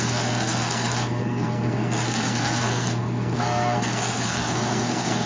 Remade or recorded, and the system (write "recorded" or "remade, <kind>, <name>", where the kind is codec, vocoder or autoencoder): remade, codec, SNAC